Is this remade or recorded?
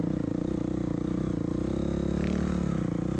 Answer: recorded